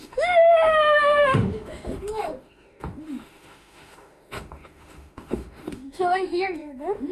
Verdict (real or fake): fake